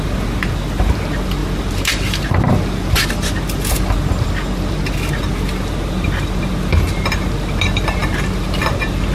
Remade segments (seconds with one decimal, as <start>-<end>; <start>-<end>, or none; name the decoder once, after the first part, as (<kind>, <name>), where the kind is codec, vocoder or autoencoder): 1.4-3.3 (vocoder, BigVGAN v2)